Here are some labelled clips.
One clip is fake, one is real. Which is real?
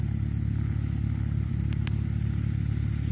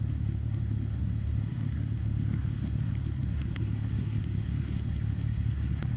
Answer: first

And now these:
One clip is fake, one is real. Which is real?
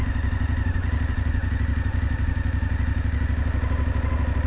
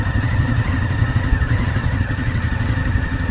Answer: first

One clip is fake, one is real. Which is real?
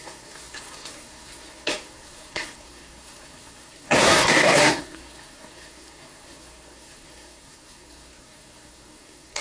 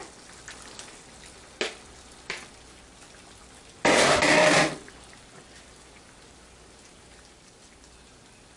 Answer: second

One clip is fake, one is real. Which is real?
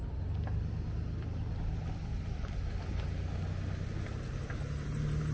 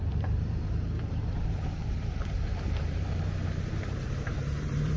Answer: first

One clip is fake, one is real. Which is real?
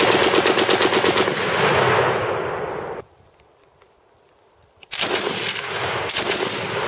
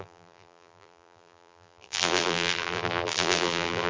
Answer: first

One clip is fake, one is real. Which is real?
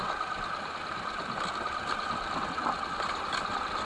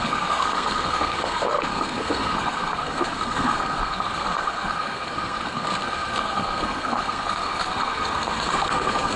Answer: first